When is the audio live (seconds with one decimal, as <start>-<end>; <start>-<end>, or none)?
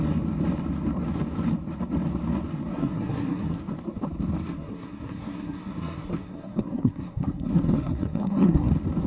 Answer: 0.0-2.7; 3.6-4.5; 8.7-9.1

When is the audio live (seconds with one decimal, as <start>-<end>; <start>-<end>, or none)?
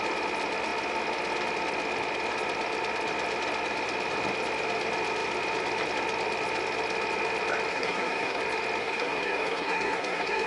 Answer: 0.0-7.7; 8.4-8.8